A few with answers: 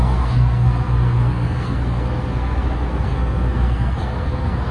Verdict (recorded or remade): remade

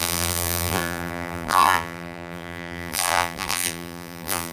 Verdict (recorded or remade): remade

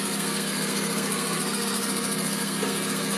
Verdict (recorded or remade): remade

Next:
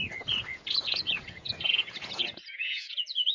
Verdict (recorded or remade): remade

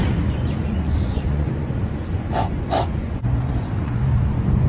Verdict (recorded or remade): remade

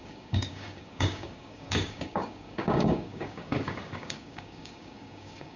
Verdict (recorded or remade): remade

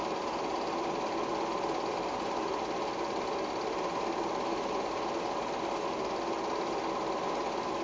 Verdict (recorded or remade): recorded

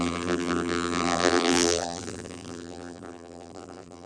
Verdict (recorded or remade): remade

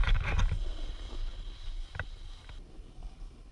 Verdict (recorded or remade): recorded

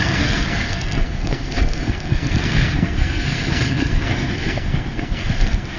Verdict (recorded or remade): remade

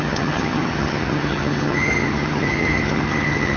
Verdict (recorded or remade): remade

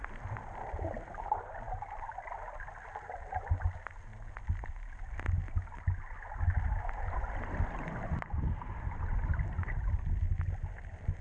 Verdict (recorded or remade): recorded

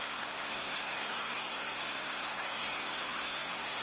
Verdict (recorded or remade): remade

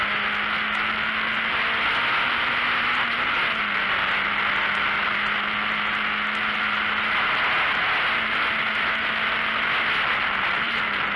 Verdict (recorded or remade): recorded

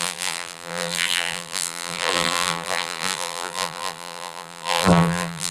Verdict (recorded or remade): remade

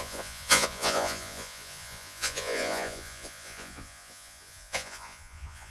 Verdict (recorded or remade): remade